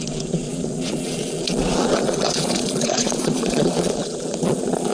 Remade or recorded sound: remade